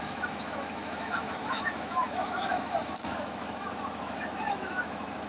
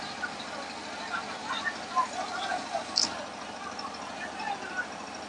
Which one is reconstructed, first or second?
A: first